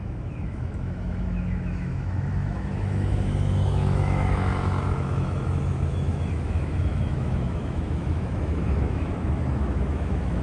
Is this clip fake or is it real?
fake